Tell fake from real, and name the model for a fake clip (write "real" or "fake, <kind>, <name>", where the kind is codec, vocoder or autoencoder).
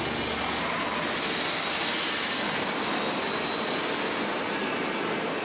real